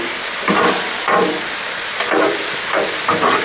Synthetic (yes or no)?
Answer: no